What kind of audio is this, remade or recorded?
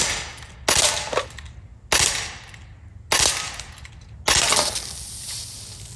recorded